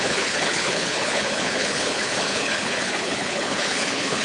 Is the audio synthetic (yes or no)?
yes